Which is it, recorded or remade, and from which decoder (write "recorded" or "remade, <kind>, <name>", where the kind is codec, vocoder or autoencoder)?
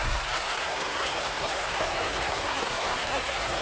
remade, codec, SNAC